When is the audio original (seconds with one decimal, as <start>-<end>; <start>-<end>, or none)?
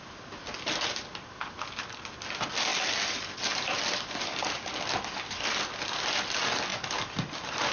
0.0-7.7